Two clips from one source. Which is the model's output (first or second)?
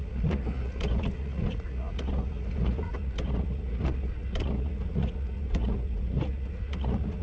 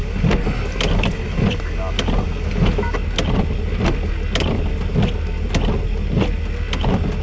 first